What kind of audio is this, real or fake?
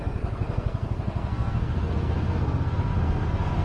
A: fake